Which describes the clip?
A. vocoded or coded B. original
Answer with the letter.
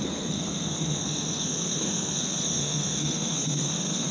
A